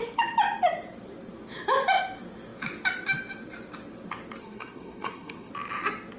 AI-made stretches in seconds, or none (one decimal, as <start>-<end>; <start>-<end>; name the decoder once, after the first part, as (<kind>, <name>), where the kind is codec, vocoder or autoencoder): 4.4-5.5 (codec, SNAC)